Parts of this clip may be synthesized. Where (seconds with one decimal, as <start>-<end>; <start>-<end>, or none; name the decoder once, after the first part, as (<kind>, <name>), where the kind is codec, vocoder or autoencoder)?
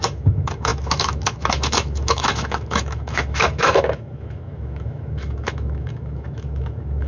0.0-7.1 (autoencoder, DAC-VAE)